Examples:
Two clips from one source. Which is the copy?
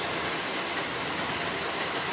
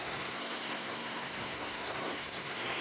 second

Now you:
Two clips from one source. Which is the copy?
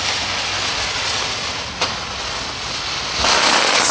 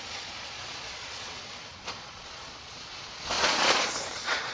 second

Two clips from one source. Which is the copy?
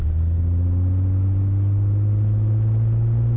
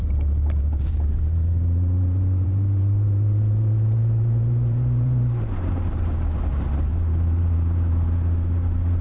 second